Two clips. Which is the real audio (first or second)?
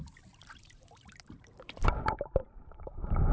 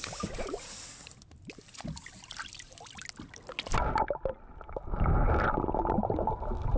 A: second